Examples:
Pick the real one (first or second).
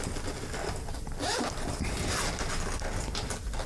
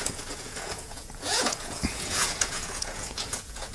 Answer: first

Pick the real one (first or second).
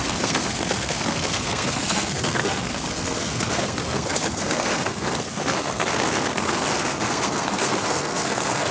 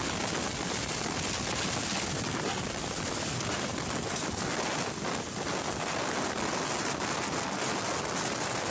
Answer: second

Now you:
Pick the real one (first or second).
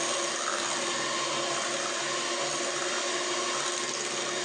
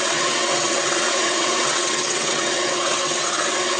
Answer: first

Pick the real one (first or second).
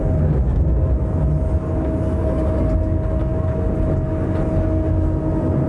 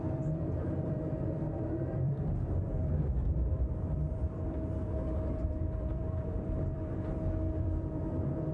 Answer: first